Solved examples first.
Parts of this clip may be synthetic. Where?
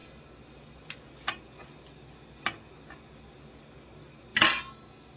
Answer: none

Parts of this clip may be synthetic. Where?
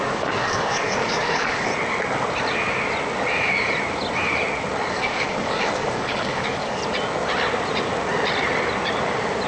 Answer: 0.0-1.7 (codec, DAC); 4.9-6.8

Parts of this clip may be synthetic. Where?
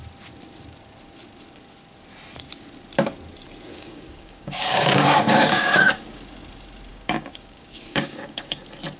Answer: 3.7-6.2 (codec, DAC); 6.9-8.6